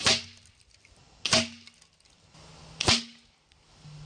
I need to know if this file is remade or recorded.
recorded